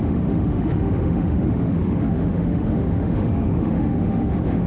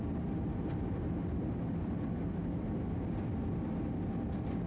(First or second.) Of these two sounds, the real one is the second